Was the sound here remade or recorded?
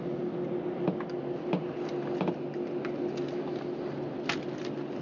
recorded